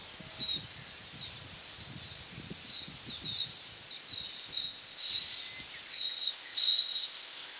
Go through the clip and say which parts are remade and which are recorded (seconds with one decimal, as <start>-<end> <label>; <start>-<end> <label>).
0.0-4.4 recorded; 4.4-5.1 remade; 5.1-5.9 recorded; 5.9-7.6 remade